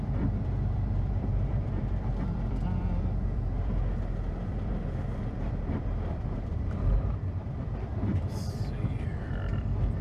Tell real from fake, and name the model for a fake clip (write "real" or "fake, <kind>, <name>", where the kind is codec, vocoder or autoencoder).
fake, vocoder, BigVGAN v2